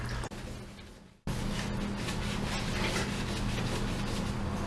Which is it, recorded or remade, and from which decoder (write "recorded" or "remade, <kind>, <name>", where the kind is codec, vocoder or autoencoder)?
recorded